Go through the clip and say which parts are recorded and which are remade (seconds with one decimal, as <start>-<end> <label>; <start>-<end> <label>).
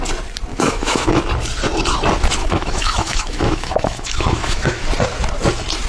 0.0-0.5 recorded; 0.5-1.1 remade; 1.1-2.4 recorded; 2.4-4.8 remade; 4.8-5.9 recorded